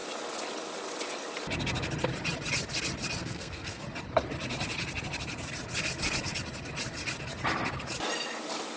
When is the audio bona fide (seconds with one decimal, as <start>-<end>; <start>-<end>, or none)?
0.0-3.2; 3.8-8.8